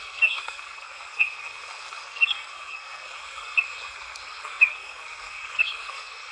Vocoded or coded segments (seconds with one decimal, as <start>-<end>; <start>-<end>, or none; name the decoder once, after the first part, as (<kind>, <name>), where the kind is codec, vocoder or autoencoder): 0.0-6.3 (codec, SNAC)